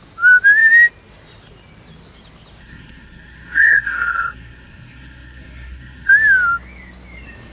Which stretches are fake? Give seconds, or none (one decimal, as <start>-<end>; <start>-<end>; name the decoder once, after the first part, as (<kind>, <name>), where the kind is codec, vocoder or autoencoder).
2.6-6.1 (codec, SNAC)